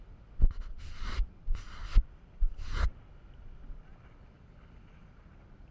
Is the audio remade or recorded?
recorded